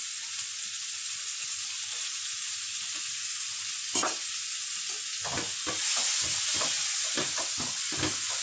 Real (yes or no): yes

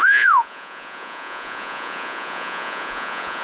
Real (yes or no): no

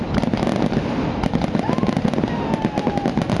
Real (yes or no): yes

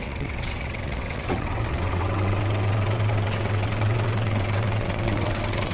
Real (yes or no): no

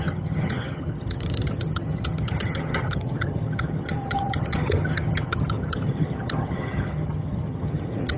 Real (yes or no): no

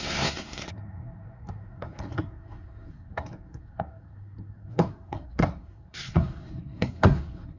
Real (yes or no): no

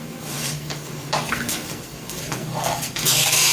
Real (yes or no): no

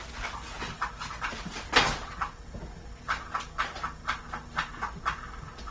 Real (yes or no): yes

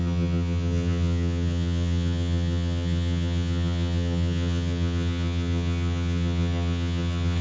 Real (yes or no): no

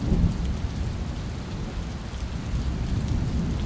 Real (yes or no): yes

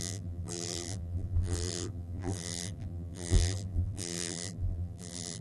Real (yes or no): no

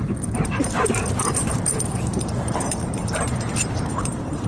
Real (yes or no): no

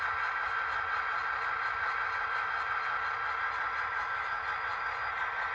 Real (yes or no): yes